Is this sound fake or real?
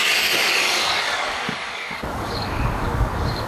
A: fake